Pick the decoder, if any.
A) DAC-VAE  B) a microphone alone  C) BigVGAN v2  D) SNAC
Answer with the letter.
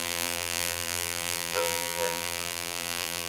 C